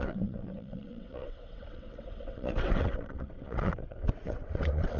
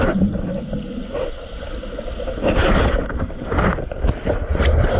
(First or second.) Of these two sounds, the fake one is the first